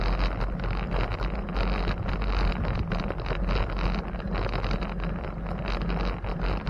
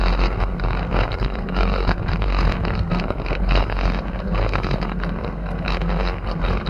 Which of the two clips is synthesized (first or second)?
second